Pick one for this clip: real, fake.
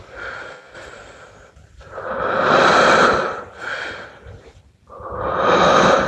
fake